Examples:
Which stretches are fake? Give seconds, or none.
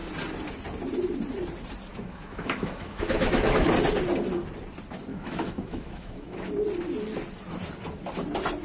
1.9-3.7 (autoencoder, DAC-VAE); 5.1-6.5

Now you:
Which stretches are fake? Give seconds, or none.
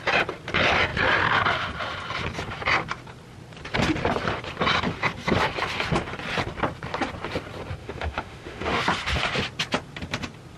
7.8-8.8 (autoencoder, DAC-VAE)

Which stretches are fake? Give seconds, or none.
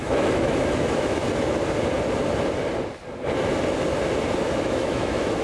0.0-1.2 (autoencoder, DAC-VAE); 4.4-5.4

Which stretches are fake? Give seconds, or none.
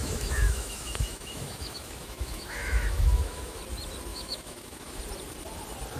0.0-3.6 (autoencoder, DAC-VAE); 4.1-5.0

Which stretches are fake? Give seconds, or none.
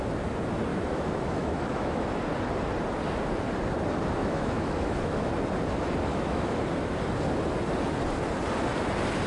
0.7-2.2 (autoencoder, DAC-VAE); 4.2-5.3; 6.1-6.6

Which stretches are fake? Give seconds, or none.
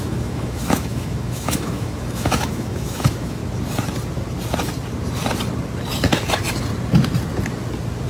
0.0-3.4 (autoencoder, DAC-VAE)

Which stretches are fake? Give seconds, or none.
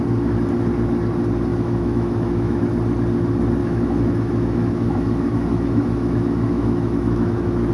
1.5-2.6 (autoencoder, DAC-VAE); 3.6-7.7